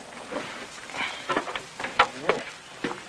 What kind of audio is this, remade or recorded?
remade